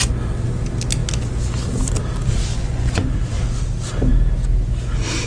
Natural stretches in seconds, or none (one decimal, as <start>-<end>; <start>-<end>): 0.0-2.5; 3.1-5.3